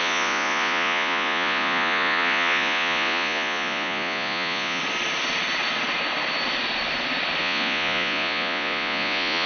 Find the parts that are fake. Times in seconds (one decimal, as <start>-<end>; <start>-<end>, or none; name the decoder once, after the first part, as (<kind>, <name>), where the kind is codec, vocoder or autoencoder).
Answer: 0.0-4.8 (vocoder, Vocos); 7.4-9.5